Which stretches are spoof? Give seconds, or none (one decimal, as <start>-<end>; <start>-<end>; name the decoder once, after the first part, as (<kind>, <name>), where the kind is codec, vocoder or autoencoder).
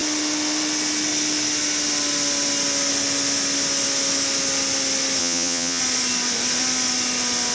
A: 5.2-5.8 (vocoder, Vocos)